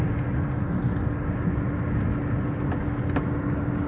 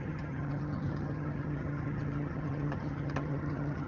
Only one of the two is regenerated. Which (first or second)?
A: second